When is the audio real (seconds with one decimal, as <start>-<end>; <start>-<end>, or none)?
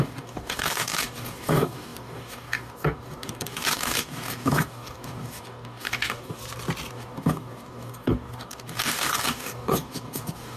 6.4-6.9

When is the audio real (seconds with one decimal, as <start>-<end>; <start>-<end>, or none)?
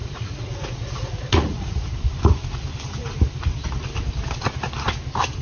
1.9-5.4